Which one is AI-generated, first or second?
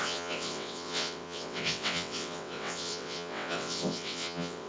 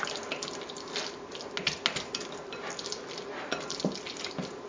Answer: first